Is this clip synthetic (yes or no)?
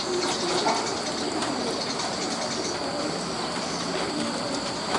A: no